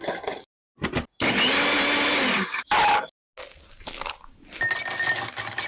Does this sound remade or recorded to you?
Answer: recorded